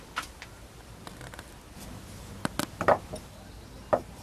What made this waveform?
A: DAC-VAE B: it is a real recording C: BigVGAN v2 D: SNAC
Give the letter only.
B